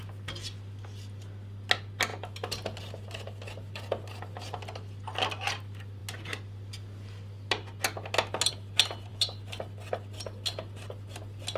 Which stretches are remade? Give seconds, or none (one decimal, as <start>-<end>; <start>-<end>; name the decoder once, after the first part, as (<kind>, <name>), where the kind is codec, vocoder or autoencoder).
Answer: none